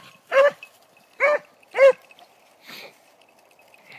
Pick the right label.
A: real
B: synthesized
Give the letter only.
A